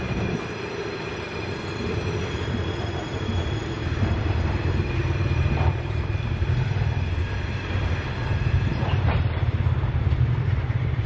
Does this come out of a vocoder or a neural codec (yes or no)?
yes